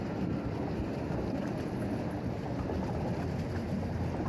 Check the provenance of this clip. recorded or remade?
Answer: recorded